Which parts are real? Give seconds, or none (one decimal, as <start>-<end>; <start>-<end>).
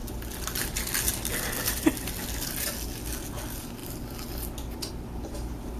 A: 0.0-5.8